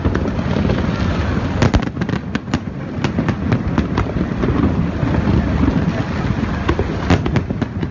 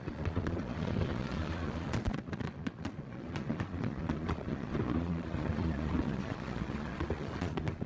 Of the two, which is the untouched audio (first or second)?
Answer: first